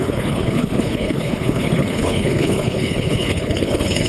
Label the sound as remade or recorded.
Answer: remade